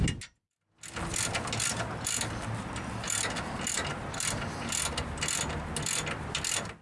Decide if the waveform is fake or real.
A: real